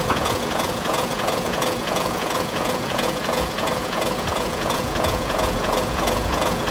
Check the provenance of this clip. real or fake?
fake